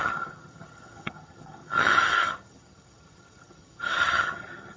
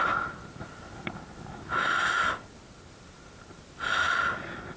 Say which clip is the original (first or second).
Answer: second